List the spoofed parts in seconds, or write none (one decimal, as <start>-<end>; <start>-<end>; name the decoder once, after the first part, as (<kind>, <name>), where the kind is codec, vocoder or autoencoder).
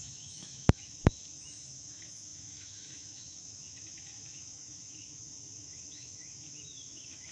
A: 0.0-7.3 (autoencoder, DAC-VAE)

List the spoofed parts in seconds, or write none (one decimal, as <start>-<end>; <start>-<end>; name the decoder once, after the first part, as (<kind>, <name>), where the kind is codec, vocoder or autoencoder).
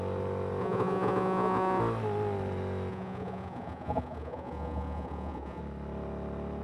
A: 0.6-1.8 (vocoder, Vocos); 2.9-5.6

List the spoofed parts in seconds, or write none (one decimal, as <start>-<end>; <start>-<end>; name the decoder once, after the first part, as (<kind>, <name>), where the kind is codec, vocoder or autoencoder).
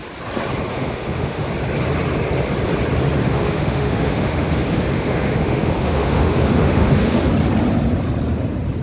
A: 0.7-1.5 (autoencoder, DAC-VAE); 3.2-7.3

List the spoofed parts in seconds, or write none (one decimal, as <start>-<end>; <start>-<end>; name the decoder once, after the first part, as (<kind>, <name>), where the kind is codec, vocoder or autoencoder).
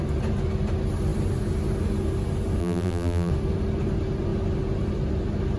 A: 2.6-3.3 (vocoder, BigVGAN v2)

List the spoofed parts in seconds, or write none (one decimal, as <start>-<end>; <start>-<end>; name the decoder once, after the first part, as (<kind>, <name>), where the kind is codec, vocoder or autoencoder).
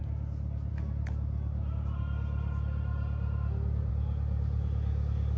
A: none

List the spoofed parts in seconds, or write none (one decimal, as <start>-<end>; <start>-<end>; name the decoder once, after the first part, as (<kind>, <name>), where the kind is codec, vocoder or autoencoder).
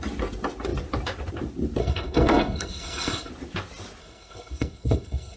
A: 1.8-3.3 (codec, SNAC); 4.0-5.4